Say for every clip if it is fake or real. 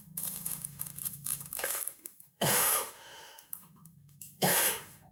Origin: fake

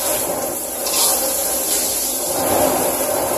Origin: real